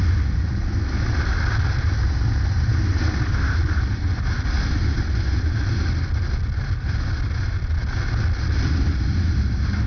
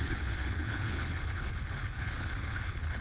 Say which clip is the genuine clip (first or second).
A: first